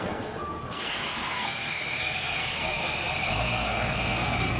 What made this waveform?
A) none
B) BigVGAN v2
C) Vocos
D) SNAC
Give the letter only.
D